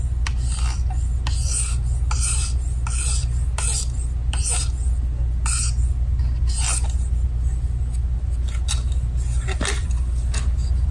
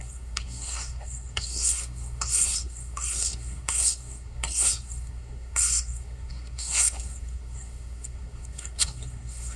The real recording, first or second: first